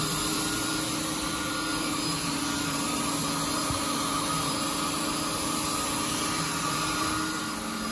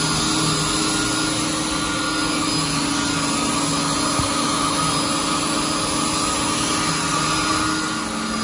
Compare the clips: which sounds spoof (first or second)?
first